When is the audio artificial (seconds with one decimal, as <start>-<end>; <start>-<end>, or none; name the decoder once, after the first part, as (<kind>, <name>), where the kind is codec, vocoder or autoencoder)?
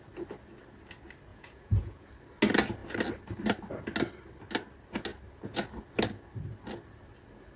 1.3-2.1 (vocoder, Vocos)